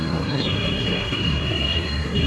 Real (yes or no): no